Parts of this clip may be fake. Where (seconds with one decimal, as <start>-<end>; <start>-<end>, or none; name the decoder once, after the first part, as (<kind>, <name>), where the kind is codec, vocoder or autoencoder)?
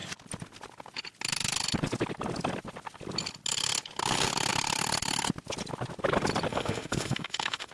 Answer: 6.5-7.7 (autoencoder, DAC-VAE)